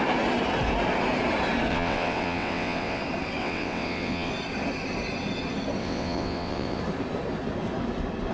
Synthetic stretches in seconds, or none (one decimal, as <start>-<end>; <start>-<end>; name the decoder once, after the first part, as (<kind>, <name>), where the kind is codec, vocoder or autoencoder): 1.7-3.0 (vocoder, WaveNeXt); 3.4-4.3; 5.8-6.8